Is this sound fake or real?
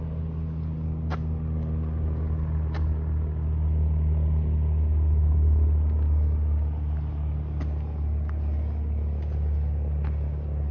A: real